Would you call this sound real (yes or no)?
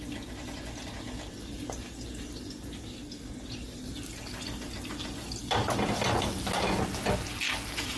yes